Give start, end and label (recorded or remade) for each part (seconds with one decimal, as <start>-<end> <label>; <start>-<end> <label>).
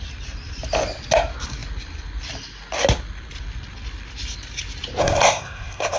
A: 0.0-5.0 recorded; 5.0-6.0 remade